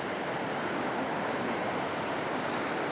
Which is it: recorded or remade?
recorded